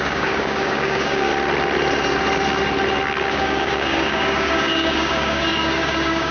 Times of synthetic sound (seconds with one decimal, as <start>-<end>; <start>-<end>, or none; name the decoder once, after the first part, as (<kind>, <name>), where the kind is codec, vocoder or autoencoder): 0.0-1.3 (codec, DAC); 3.3-6.3